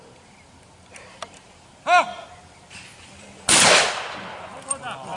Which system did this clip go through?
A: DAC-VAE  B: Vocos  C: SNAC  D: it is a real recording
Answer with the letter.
D